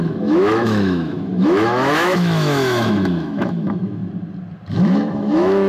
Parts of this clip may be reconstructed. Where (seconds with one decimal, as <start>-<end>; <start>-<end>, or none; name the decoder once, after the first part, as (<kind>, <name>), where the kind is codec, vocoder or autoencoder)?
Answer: 0.0-4.0 (autoencoder, DAC-VAE); 4.7-5.7